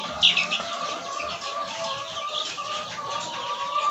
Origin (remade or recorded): recorded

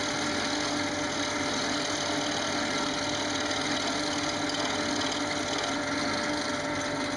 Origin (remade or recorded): recorded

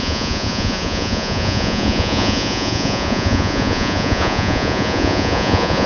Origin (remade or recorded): remade